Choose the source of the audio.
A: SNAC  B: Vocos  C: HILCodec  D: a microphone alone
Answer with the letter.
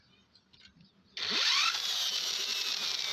D